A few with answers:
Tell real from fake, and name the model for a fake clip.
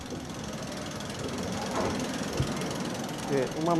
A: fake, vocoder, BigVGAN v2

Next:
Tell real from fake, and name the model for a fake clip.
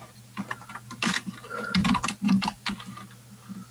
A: real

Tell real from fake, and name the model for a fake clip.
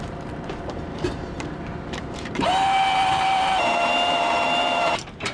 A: fake, vocoder, BigVGAN v2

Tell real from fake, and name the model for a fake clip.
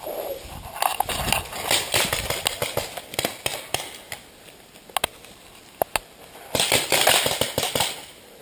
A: real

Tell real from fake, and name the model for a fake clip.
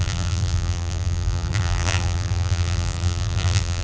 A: fake, vocoder, BigVGAN v2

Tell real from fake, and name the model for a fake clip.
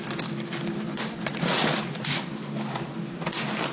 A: real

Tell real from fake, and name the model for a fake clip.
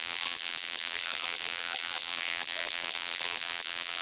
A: fake, vocoder, BigVGAN v2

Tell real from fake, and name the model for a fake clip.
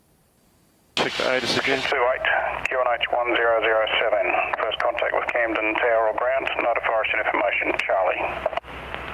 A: real